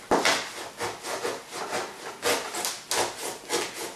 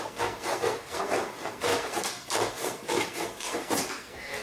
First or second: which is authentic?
first